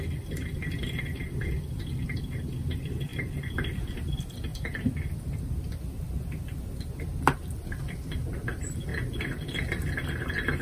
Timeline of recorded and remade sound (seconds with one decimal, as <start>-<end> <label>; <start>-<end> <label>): 0.0-8.9 recorded; 8.9-9.5 remade; 9.5-10.6 recorded